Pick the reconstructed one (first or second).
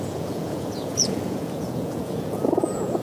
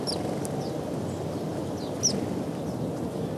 first